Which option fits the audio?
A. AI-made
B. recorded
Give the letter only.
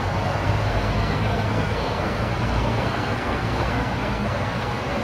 A